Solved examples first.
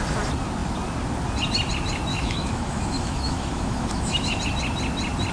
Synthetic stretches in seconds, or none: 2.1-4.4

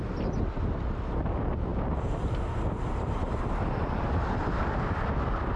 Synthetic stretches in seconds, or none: none

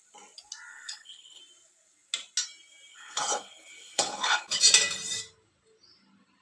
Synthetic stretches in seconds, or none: 0.7-1.4; 2.9-4.6